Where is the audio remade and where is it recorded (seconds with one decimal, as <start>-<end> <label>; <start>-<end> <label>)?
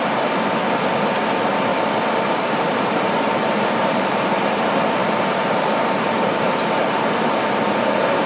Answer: 0.0-1.7 recorded; 1.7-6.4 remade; 6.4-8.3 recorded